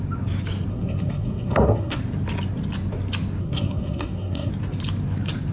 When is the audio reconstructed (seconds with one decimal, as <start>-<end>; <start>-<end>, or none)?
0.7-2.0; 3.4-4.5

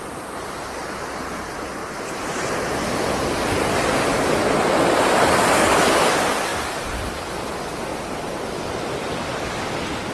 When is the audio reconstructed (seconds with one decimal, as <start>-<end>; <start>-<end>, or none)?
1.8-2.7; 6.5-7.4

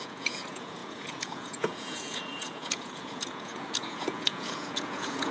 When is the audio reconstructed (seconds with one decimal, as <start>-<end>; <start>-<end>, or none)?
0.0-5.3

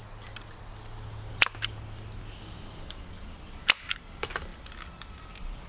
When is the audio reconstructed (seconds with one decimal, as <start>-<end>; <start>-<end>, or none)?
none